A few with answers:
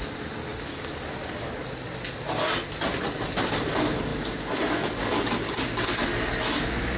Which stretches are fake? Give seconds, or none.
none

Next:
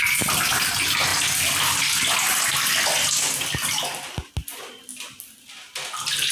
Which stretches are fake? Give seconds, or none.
none

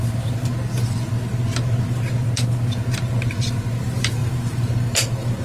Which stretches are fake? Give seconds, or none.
0.0-0.5; 3.7-5.4

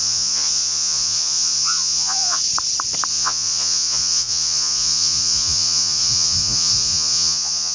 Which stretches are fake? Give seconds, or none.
0.0-2.4; 3.1-7.7

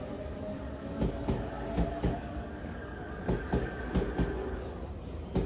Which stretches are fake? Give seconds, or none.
0.5-3.8; 4.4-4.9

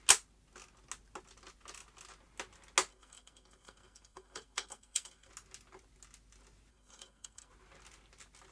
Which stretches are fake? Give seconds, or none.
2.9-5.3; 6.7-7.5

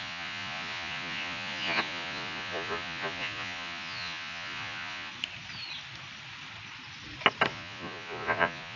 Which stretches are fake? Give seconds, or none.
0.0-5.1; 7.5-8.8